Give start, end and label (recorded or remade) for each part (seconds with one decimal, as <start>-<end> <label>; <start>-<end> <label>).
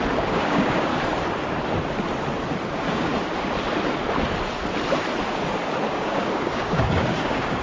0.0-0.9 remade; 0.9-2.7 recorded; 2.7-3.1 remade; 3.1-5.9 recorded; 5.9-7.6 remade